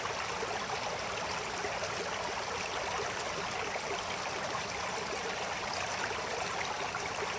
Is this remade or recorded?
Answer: recorded